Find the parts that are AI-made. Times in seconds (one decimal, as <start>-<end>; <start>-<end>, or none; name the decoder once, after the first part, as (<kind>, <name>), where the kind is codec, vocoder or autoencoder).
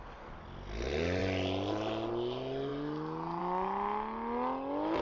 none